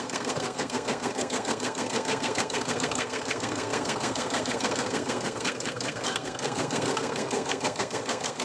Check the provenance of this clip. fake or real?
fake